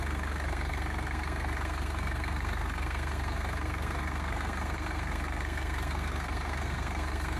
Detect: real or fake fake